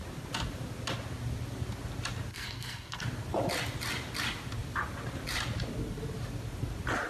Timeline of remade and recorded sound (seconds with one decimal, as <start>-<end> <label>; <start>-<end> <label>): 0.0-2.3 recorded; 2.3-3.0 remade; 3.0-7.1 recorded